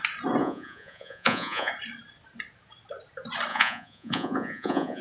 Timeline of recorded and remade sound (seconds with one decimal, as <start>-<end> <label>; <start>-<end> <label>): 0.0-0.4 recorded; 0.4-1.7 remade; 1.7-3.5 recorded; 3.5-5.0 remade